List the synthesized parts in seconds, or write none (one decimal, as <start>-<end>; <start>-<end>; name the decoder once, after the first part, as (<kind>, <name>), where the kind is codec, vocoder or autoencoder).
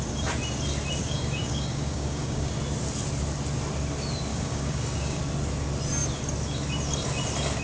1.0-2.5 (codec, DAC); 4.3-5.2